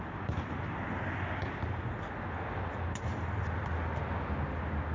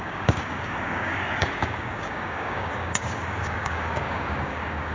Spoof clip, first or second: second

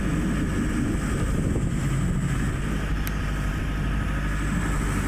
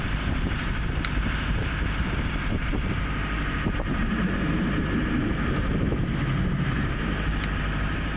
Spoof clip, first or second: second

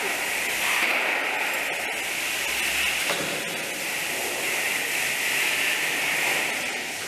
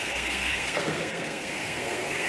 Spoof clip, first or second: second